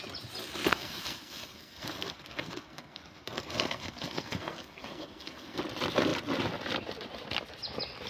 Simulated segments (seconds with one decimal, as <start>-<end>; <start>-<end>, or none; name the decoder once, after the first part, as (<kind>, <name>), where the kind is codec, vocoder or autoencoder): 0.7-5.6 (codec, SNAC)